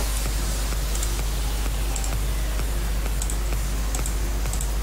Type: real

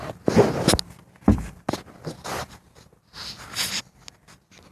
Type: real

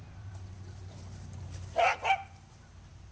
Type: real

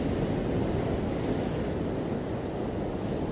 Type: real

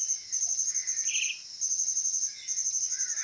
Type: real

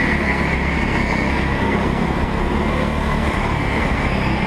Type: fake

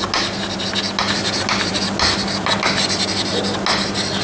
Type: real